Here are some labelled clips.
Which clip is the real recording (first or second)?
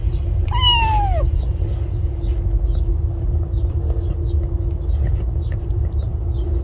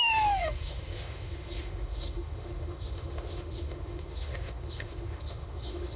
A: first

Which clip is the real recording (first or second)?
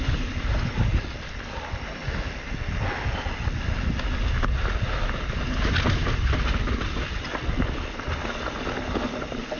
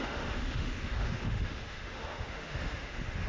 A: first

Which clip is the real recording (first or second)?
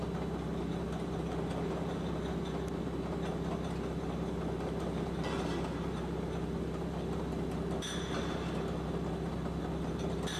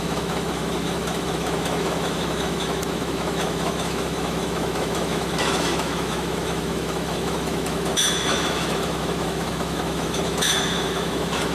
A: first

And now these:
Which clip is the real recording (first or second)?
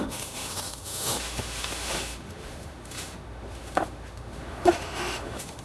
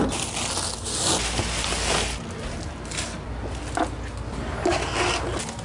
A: second